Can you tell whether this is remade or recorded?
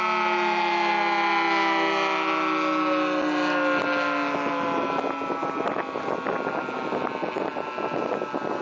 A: recorded